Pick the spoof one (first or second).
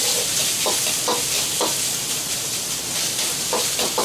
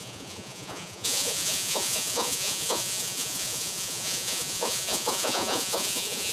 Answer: second